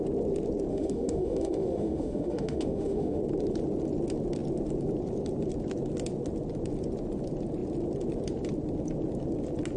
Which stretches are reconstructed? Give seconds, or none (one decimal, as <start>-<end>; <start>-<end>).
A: 0.7-3.2